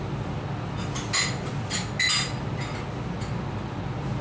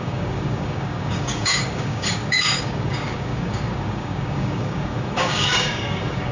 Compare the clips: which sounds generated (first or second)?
second